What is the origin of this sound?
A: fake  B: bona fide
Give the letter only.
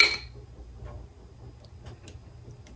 B